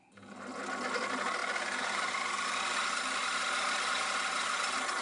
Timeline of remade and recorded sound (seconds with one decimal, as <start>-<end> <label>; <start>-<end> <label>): 0.0-5.0 recorded